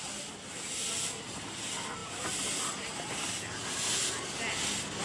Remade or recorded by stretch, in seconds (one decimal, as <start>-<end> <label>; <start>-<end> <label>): 0.0-5.0 recorded